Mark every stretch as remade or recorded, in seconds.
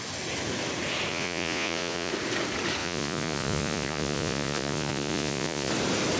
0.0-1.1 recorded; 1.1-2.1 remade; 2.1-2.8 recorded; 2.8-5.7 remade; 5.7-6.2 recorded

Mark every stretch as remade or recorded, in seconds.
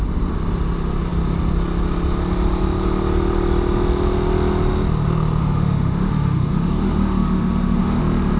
0.0-5.4 recorded; 5.4-8.0 remade; 8.0-8.4 recorded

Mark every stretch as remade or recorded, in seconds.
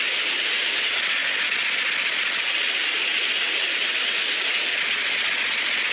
0.0-5.9 recorded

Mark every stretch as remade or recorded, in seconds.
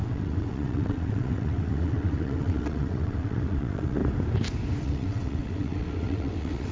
0.0-4.0 remade; 4.0-4.8 recorded; 4.8-6.7 remade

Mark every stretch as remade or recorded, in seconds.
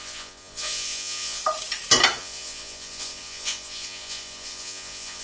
0.0-1.4 remade; 1.4-2.2 recorded; 2.2-5.2 remade